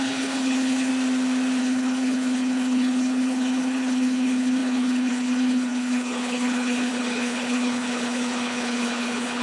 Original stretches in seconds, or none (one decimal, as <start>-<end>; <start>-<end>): 0.9-1.6

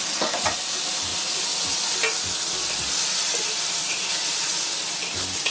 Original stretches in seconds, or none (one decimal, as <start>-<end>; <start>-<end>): 0.0-5.5